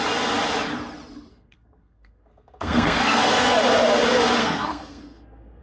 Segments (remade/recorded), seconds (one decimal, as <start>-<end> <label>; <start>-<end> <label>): 0.0-1.3 recorded; 1.3-3.6 remade; 3.6-4.4 recorded; 4.4-5.6 remade